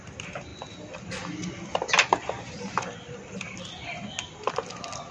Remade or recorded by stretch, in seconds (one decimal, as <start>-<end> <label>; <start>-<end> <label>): 0.0-5.1 recorded

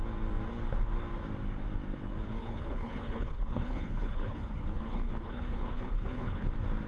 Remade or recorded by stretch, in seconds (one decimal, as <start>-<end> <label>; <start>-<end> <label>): 0.0-2.4 recorded; 2.4-6.5 remade; 6.5-6.9 recorded

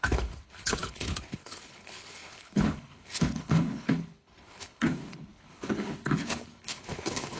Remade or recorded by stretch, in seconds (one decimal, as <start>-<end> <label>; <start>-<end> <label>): 0.0-7.4 remade

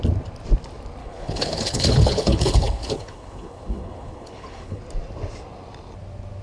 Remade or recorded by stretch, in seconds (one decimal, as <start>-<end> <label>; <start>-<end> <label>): 0.0-1.0 recorded; 1.0-4.8 remade; 4.8-6.4 recorded

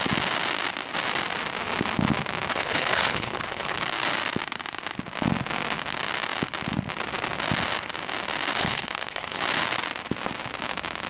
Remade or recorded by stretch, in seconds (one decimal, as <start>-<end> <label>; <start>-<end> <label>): 0.0-2.5 recorded; 2.5-3.8 remade; 3.8-8.6 recorded; 8.6-9.4 remade; 9.4-11.1 recorded